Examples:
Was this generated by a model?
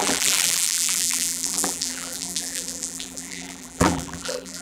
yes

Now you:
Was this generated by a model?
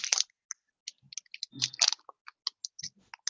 no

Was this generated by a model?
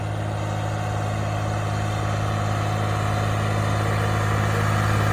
no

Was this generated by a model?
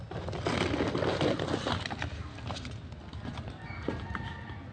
no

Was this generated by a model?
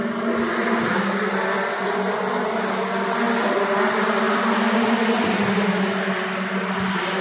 no